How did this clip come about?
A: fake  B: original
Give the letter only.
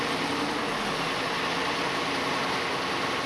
B